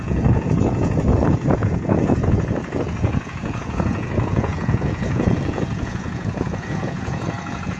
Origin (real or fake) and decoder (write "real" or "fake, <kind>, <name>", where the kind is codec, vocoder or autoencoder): fake, vocoder, Vocos